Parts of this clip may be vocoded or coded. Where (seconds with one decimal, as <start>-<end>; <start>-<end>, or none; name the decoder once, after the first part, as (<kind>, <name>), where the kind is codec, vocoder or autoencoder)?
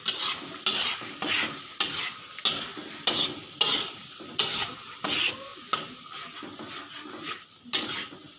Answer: none